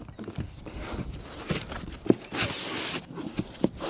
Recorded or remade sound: recorded